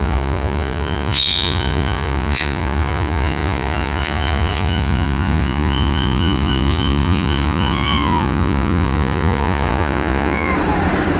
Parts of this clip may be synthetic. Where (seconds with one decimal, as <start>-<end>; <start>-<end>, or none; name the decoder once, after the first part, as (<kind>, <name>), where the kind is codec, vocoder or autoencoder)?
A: 0.0-10.5 (vocoder, Vocos)